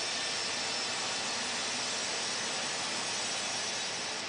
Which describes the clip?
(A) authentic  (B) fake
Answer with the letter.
A